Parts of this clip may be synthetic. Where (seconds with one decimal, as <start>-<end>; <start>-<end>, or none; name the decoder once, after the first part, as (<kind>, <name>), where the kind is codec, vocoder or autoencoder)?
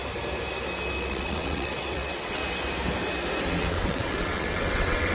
1.0-2.4 (vocoder, WaveNeXt); 3.4-5.1